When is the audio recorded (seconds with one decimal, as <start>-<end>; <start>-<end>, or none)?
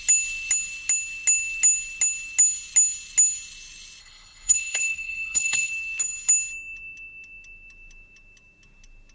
0.0-4.0; 5.7-9.1